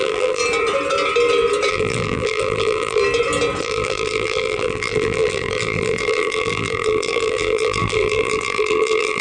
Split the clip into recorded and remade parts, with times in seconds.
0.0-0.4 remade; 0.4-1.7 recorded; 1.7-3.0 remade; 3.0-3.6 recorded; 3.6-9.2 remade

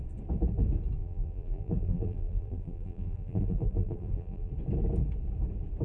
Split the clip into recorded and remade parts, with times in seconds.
0.0-1.0 recorded; 1.0-4.5 remade; 4.5-5.8 recorded

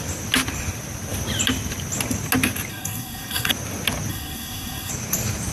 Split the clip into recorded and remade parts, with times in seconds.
0.0-2.7 recorded; 2.7-3.5 remade; 3.5-4.1 recorded; 4.1-4.9 remade; 4.9-5.5 recorded

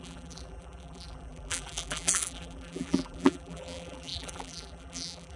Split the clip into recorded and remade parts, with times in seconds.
0.0-5.4 remade

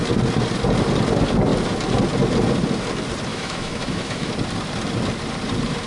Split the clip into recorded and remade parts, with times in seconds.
0.0-3.3 recorded; 3.3-4.3 remade; 4.3-5.9 recorded